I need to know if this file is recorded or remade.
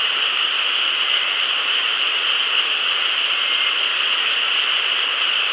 recorded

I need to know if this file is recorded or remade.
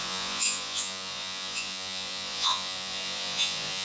remade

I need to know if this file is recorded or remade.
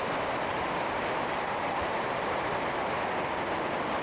recorded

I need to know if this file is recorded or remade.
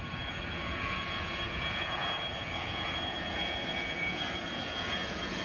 remade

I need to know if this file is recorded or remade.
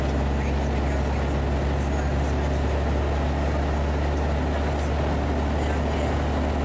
recorded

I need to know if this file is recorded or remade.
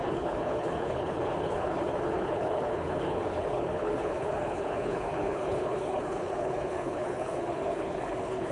remade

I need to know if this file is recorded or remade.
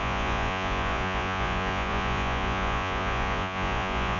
remade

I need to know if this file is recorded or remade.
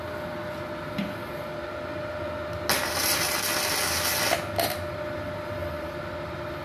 recorded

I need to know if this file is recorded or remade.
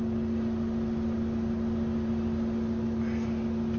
recorded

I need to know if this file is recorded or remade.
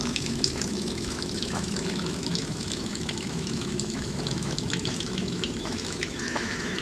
remade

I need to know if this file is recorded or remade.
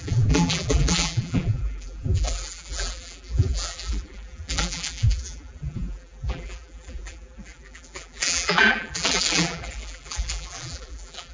remade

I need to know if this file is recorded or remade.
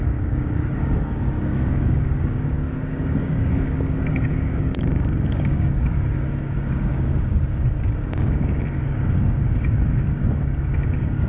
remade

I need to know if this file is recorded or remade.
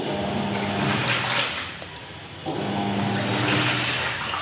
recorded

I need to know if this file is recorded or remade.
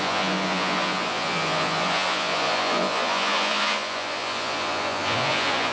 remade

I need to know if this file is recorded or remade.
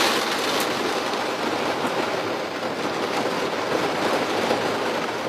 recorded